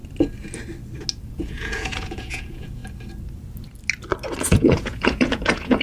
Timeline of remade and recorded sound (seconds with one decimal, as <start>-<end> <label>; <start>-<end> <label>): 0.0-1.3 recorded; 1.3-2.8 remade; 2.8-4.4 recorded; 4.4-5.8 remade